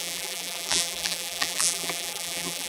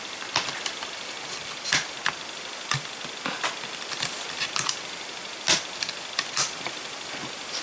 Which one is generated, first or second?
first